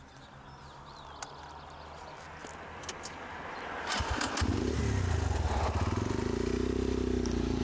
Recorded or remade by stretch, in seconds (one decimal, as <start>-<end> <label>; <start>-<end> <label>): 0.0-7.6 recorded